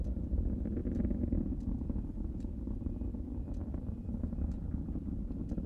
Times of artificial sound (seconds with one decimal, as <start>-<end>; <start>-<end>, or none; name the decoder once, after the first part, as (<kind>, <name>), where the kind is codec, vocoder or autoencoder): none